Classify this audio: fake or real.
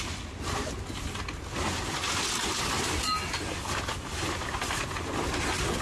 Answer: real